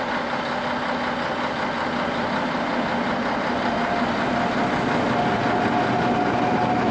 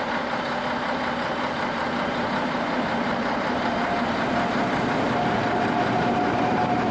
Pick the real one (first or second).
first